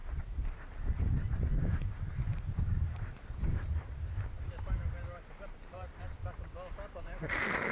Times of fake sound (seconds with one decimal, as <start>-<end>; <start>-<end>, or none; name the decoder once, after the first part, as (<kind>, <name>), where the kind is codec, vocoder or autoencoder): 0.0-6.2 (vocoder, BigVGAN v2); 7.0-7.7